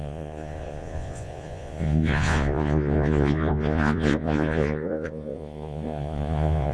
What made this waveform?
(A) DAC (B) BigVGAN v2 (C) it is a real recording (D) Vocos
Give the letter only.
D